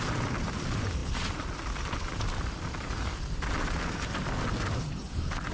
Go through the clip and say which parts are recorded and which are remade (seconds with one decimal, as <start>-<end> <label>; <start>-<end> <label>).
0.0-5.5 recorded